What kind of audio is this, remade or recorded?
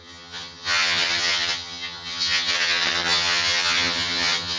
remade